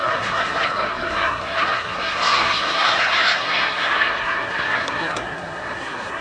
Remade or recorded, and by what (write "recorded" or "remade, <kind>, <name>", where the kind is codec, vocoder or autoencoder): remade, codec, SNAC